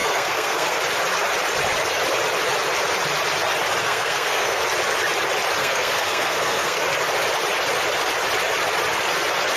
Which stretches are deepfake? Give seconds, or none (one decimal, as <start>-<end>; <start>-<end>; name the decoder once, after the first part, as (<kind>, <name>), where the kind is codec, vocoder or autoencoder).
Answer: 0.0-0.8 (codec, SNAC); 3.8-4.6; 5.6-6.8